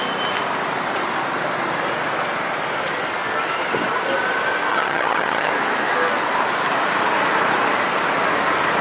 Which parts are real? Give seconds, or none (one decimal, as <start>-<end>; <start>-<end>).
0.0-4.7; 5.5-8.8

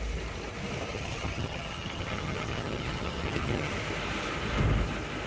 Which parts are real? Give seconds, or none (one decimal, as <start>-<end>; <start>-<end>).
0.0-0.9; 3.7-5.3

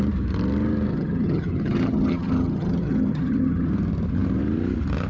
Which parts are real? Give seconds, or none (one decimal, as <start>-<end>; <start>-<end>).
0.0-0.9; 3.7-5.1

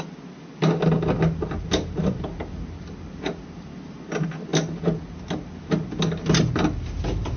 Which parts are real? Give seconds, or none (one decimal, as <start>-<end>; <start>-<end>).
0.0-7.4

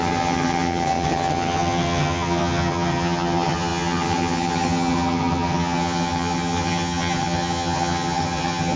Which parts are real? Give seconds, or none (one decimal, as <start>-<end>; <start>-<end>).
none

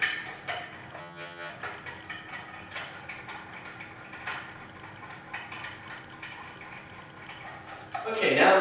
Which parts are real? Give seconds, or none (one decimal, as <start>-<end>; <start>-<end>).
0.0-1.0; 1.5-8.6

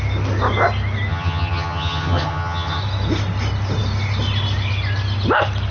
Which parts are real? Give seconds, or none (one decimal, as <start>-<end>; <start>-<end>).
0.0-1.1; 2.8-5.7

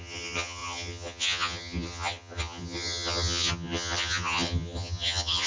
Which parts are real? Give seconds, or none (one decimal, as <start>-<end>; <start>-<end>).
none